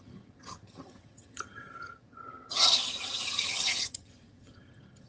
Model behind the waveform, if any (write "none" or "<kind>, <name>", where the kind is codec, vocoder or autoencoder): vocoder, HiFi-GAN